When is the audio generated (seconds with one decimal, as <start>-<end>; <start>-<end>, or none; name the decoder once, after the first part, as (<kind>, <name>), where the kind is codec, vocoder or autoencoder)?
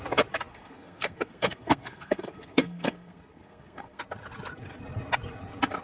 0.5-4.0 (codec, SNAC)